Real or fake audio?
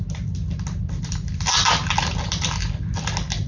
real